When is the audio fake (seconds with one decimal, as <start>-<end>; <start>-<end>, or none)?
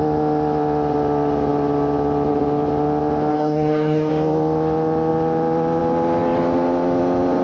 3.3-4.1